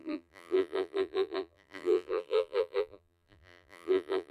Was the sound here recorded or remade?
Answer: remade